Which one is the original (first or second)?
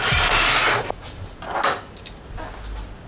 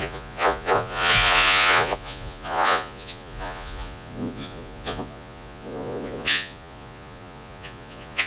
first